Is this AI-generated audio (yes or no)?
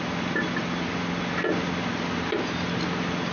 no